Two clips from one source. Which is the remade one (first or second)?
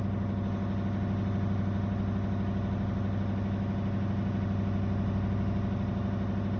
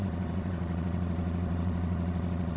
second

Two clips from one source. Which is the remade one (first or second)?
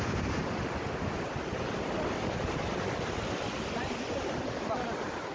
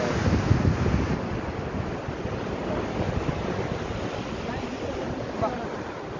first